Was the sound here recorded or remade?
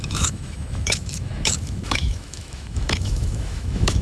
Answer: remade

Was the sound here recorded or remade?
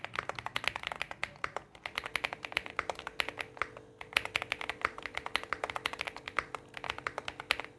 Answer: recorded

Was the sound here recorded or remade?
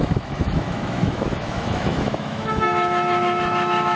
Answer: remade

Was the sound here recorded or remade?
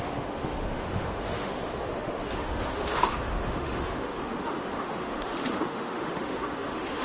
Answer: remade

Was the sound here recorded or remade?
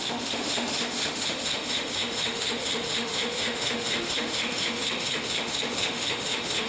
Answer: remade